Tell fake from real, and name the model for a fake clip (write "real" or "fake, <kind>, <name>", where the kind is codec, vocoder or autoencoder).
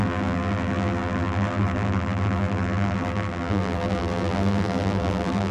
fake, vocoder, BigVGAN v2